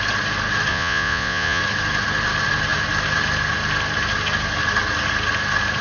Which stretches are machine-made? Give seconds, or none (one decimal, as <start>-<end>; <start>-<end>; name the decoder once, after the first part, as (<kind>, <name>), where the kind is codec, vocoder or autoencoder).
0.7-1.6 (vocoder, Vocos)